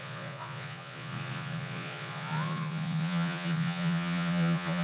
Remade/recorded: remade